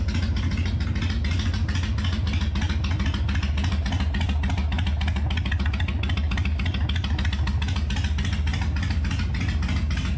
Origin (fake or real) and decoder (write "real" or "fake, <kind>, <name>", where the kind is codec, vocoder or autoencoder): real